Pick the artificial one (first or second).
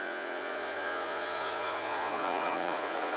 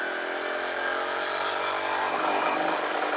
first